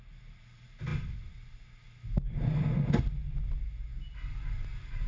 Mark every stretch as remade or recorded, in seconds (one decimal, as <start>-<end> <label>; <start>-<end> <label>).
0.0-5.1 recorded